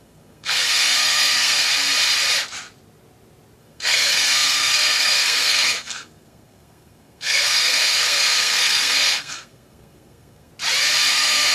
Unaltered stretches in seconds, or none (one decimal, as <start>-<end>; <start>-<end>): 1.7-3.6; 10.5-11.1